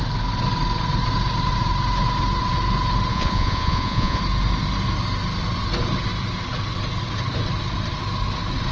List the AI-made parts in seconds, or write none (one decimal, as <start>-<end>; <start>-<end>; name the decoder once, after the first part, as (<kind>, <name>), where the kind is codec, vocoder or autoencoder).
3.1-4.2 (vocoder, Vocos)